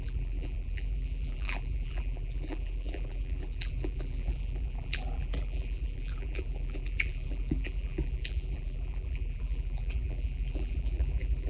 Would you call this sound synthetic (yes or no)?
yes